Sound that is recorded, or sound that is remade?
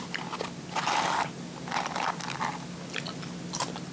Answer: recorded